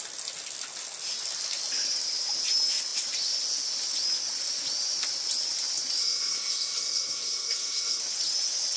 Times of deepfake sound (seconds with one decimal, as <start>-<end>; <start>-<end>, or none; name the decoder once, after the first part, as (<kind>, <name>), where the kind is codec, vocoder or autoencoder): 6.0-8.0 (codec, SNAC)